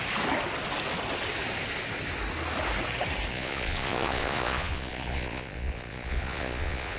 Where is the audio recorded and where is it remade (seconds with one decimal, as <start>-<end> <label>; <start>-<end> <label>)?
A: 0.0-3.3 recorded; 3.3-7.0 remade